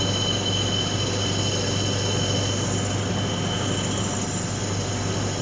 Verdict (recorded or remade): recorded